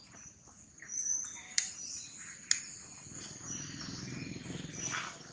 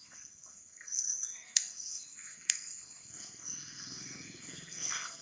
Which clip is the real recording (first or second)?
first